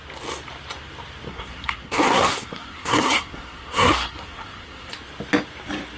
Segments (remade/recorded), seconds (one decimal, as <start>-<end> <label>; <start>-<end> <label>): 0.0-1.3 recorded; 1.3-4.9 remade; 4.9-6.0 recorded